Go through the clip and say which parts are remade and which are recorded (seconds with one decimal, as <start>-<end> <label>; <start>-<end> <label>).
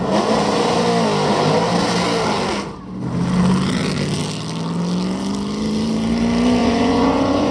0.0-6.6 recorded; 6.6-7.5 remade